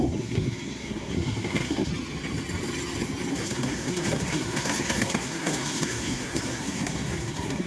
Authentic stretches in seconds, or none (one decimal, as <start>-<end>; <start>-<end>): 1.9-3.3